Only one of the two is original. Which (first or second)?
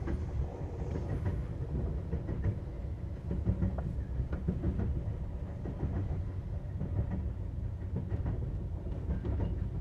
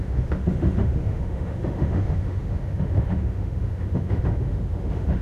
first